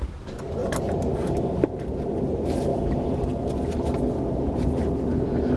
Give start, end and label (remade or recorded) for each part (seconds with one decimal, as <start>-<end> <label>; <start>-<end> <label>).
0.0-5.6 recorded